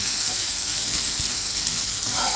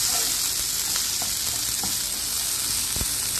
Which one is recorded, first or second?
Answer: second